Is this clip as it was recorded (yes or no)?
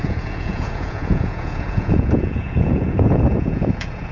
no